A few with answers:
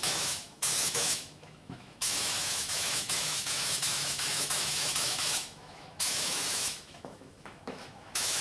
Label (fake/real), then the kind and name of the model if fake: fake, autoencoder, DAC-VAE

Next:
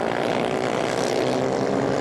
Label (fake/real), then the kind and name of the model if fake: real